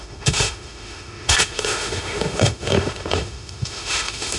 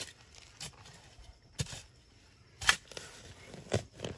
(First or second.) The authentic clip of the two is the second